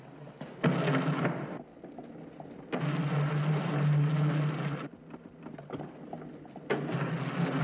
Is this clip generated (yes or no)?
no